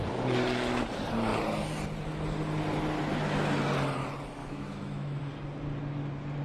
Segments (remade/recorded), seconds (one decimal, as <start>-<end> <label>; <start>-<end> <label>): 0.0-4.4 recorded; 4.4-5.2 remade; 5.2-6.4 recorded